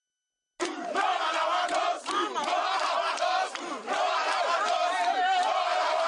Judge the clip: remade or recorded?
recorded